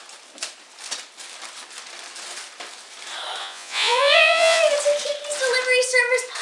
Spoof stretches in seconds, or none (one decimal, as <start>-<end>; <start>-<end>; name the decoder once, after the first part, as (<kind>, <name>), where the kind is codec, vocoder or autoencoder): 3.4-4.6 (vocoder, Vocos)